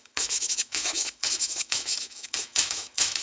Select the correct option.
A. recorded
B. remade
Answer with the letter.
B